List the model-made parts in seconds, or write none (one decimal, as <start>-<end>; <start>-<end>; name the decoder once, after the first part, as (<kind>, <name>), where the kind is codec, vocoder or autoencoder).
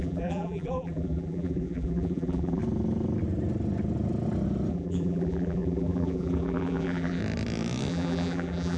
0.0-2.6 (vocoder, BigVGAN v2); 4.7-7.2; 7.9-8.8